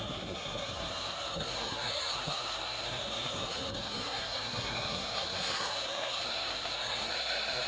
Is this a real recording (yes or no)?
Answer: no